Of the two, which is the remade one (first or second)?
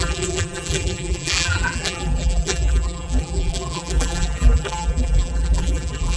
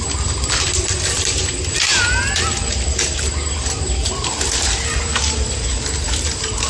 first